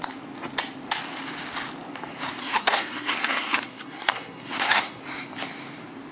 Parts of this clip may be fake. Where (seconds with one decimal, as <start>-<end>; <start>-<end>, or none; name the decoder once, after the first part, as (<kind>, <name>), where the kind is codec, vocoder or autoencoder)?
2.4-5.0 (codec, SNAC)